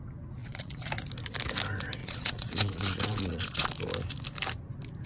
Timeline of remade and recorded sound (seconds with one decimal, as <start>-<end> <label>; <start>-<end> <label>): 0.0-0.4 recorded; 0.4-0.9 remade; 0.9-2.0 recorded; 2.0-3.7 remade; 3.7-5.1 recorded